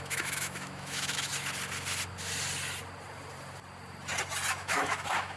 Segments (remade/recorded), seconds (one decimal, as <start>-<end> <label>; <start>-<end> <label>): 0.0-1.3 remade; 1.3-4.5 recorded; 4.5-5.4 remade